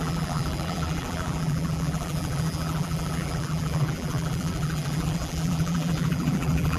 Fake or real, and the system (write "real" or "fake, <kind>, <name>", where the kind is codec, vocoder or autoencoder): fake, vocoder, BigVGAN v2